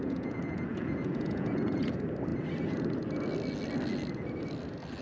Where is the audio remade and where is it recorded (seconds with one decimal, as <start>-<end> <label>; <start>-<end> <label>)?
0.0-1.9 remade; 1.9-5.0 recorded